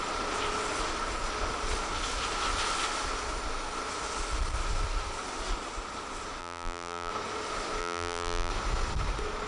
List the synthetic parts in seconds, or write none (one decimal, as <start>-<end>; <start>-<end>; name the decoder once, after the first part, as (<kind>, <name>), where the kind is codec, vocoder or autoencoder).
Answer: 6.4-7.1 (vocoder, BigVGAN v2); 7.8-8.5